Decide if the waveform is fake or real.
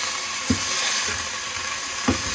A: real